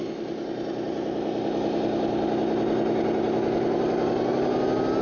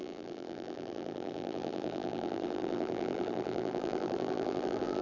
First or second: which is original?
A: first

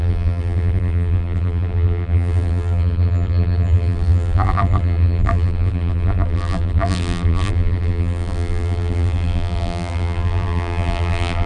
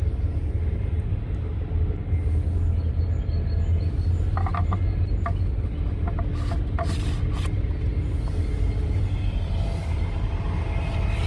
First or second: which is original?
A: second